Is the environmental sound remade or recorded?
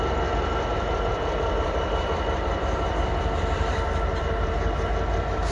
remade